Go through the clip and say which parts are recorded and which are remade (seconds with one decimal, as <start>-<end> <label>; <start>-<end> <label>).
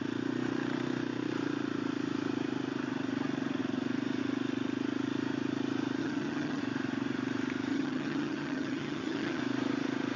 0.0-6.0 recorded; 6.0-6.6 remade; 6.6-7.7 recorded; 7.7-9.4 remade; 9.4-10.2 recorded